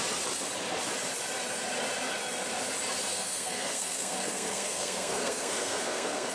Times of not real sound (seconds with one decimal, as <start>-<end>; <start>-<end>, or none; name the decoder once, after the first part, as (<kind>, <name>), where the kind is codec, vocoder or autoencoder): 3.1-6.3 (codec, SNAC)